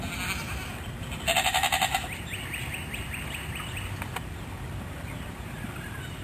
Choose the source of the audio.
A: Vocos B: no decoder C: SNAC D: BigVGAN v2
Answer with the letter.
B